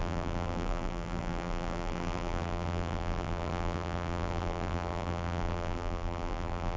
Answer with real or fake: fake